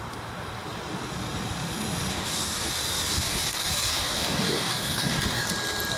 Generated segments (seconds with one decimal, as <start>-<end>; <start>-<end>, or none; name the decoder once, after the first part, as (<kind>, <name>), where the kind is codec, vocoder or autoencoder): 2.1-2.7 (codec, DAC); 3.1-5.5